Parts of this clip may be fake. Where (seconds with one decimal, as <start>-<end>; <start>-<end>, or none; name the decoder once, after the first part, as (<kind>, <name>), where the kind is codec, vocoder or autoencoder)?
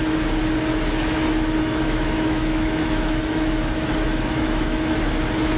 1.6-5.0 (autoencoder, DAC-VAE)